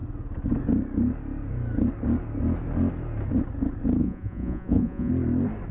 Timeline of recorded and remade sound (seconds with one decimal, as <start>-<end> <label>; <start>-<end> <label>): 0.0-4.0 recorded; 4.0-5.1 remade; 5.1-5.7 recorded